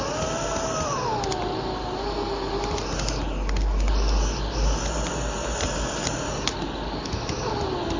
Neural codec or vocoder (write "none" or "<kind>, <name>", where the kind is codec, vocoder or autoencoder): none